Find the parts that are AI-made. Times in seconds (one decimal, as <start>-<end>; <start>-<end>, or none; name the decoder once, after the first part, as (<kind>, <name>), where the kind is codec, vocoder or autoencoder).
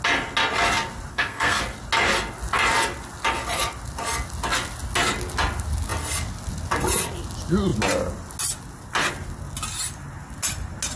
1.1-1.6 (codec, SNAC)